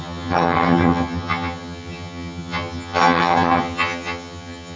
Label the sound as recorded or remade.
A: remade